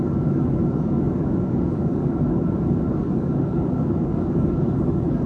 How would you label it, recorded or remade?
remade